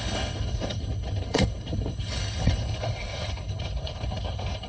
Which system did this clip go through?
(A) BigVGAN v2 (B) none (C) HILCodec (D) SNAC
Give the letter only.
C